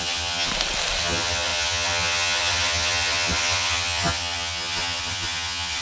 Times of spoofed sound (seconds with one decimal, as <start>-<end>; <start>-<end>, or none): 0.0-0.5; 1.0-5.8